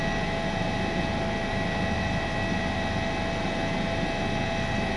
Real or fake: real